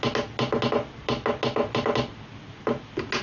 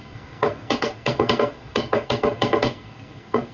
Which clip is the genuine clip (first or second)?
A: first